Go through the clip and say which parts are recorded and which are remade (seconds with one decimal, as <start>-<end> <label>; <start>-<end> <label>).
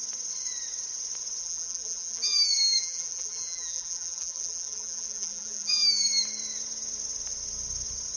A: 0.0-1.4 recorded; 1.4-6.1 remade; 6.1-8.2 recorded